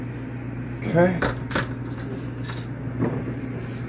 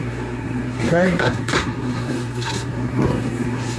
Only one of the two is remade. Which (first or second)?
second